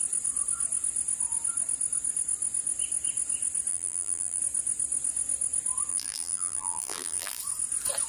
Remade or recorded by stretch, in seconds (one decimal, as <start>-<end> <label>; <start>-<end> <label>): 0.0-3.7 recorded; 3.7-4.4 remade; 4.4-5.9 recorded; 5.9-7.4 remade; 7.4-8.1 recorded